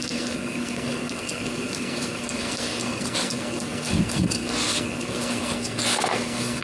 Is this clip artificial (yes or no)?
yes